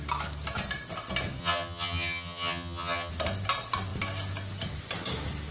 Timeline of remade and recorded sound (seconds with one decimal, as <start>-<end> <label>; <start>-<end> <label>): 0.0-1.4 recorded; 1.4-3.1 remade; 3.1-5.5 recorded